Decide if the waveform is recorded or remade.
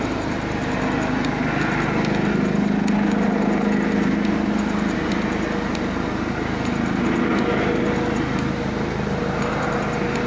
recorded